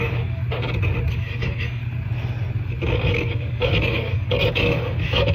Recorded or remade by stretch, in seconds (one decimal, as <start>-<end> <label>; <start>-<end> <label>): 0.0-0.4 remade; 0.4-1.1 recorded; 1.1-1.8 remade; 1.8-2.8 recorded; 2.8-5.3 remade